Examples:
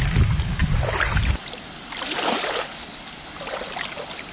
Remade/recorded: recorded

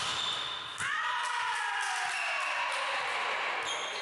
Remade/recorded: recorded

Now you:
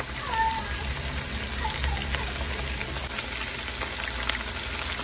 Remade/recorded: recorded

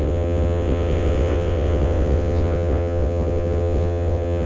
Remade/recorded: remade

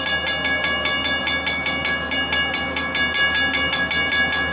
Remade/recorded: recorded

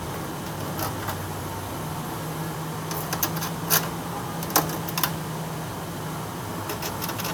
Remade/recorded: recorded